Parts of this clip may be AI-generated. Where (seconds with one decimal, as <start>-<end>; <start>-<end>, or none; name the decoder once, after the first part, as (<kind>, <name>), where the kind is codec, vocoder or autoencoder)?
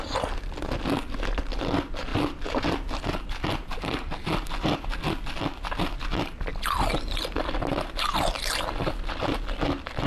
none